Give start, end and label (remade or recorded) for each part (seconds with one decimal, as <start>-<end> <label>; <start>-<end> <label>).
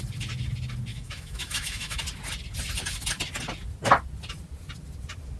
0.0-0.9 recorded; 0.9-2.0 remade; 2.0-5.4 recorded